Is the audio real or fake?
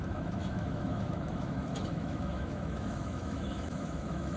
fake